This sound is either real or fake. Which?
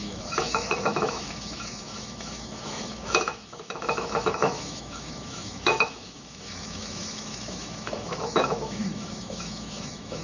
fake